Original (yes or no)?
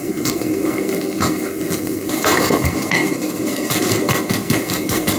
no